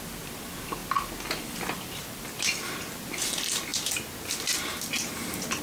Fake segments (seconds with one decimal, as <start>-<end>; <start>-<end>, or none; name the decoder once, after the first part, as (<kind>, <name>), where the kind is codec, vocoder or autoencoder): none